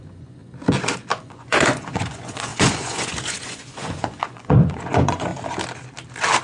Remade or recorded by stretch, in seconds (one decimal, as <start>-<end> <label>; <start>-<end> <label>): 0.0-0.4 remade; 0.4-1.2 recorded; 1.2-5.3 remade; 5.3-6.4 recorded